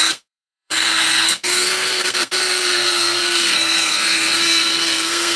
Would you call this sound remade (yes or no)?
yes